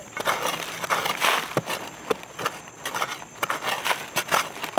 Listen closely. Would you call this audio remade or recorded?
recorded